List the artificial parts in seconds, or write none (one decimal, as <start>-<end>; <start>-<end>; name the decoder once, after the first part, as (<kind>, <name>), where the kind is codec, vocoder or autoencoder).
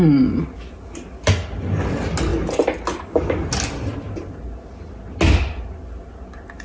none